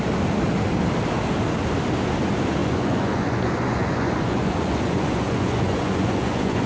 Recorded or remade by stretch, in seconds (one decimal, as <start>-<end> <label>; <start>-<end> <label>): 0.0-2.6 recorded; 2.6-6.7 remade